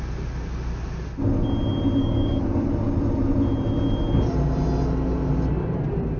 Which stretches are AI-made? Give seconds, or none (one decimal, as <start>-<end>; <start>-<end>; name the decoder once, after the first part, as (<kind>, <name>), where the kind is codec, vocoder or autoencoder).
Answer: 2.0-2.7 (codec, DAC)